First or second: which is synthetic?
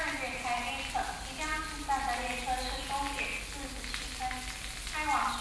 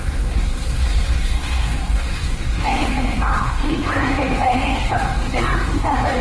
second